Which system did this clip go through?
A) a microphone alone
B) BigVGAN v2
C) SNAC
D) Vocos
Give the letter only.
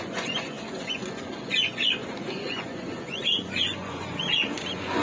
D